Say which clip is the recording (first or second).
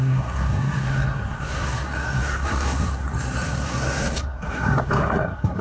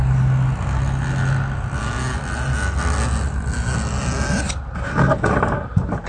second